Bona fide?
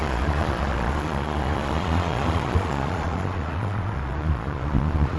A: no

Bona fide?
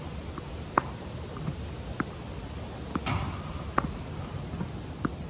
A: yes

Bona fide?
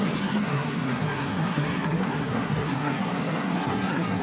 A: no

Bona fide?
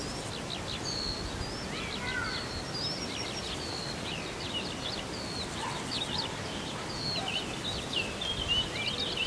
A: yes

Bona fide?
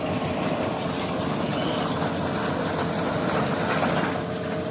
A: yes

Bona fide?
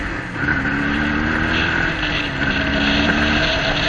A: yes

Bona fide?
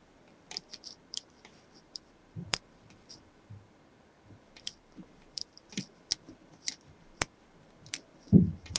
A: no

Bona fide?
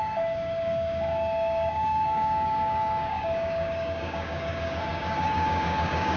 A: no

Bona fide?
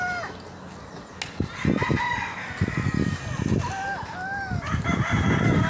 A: yes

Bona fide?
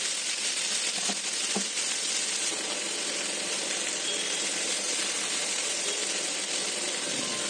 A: yes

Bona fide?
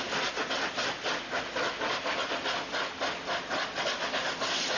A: yes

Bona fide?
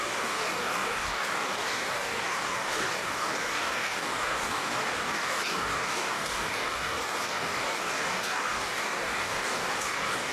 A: no